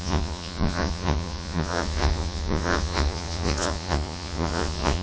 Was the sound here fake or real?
fake